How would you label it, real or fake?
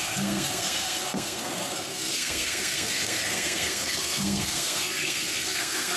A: fake